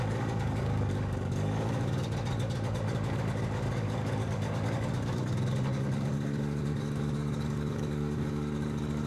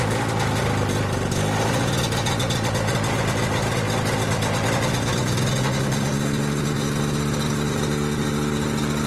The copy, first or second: first